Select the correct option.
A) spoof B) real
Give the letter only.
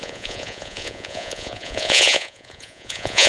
A